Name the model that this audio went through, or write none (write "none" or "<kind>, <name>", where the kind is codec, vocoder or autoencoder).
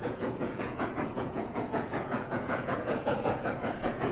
vocoder, Vocos